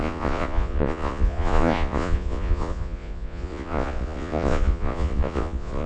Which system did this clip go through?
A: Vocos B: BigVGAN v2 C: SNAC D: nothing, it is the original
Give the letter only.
A